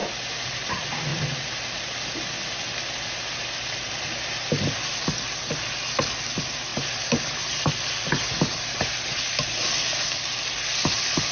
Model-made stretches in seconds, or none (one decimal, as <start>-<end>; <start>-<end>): none